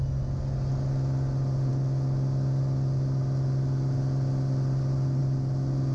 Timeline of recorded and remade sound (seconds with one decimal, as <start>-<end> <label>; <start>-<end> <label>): 0.0-5.9 recorded